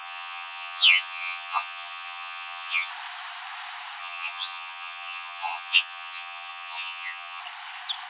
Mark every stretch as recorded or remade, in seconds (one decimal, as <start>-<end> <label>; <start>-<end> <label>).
0.0-2.9 remade; 2.9-4.0 recorded; 4.0-7.4 remade; 7.4-8.1 recorded